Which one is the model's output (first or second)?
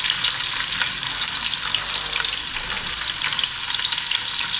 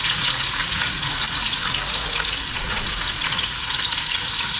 second